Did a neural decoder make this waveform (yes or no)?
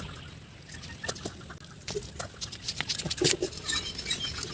no